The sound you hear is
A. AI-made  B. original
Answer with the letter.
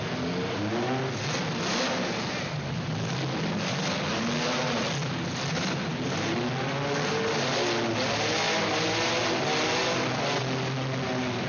B